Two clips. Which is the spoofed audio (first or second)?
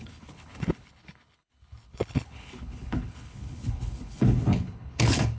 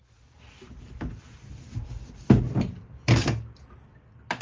first